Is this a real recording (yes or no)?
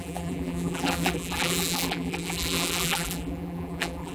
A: no